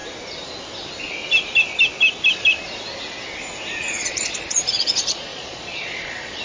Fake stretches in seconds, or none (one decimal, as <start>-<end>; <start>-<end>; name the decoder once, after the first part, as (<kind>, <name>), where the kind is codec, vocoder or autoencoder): 3.8-6.4 (vocoder, Vocos)